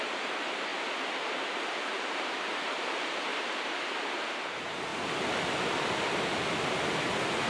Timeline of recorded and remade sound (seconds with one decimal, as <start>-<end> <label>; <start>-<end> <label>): 0.0-0.7 remade; 0.7-1.3 recorded; 1.3-3.3 remade; 3.3-4.1 recorded; 4.1-4.9 remade; 4.9-6.8 recorded; 6.8-7.5 remade